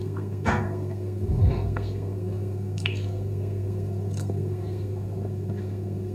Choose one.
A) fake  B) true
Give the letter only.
A